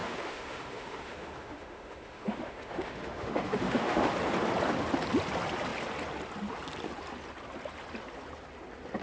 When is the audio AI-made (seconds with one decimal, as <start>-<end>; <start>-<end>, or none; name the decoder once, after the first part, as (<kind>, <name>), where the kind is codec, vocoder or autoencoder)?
0.0-4.1 (autoencoder, DAC-VAE)